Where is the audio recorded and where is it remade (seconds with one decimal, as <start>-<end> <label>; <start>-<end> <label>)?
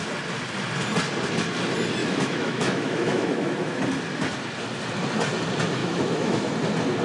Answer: 0.0-2.0 recorded; 2.0-3.8 remade; 3.8-5.8 recorded; 5.8-6.5 remade; 6.5-7.0 recorded